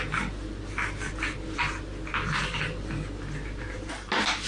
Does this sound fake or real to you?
real